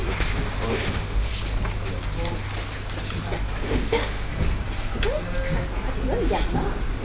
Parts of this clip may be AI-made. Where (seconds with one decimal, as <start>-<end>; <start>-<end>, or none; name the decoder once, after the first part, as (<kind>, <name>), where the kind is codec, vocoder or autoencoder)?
0.7-1.3 (autoencoder, DAC-VAE); 3.6-4.3